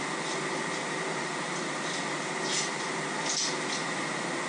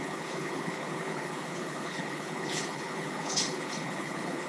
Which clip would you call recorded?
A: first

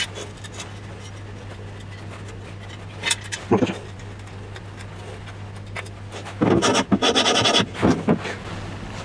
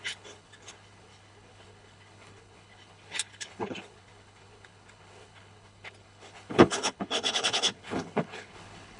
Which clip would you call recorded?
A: first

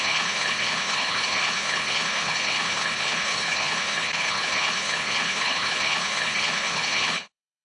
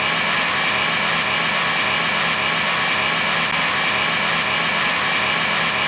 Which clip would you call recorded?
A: second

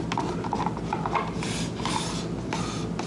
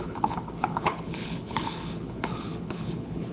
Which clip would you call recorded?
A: first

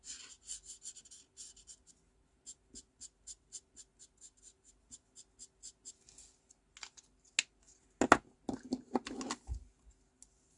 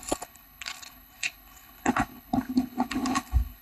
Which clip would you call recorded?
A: first